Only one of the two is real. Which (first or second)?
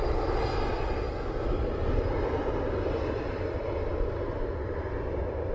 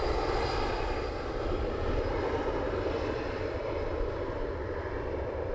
first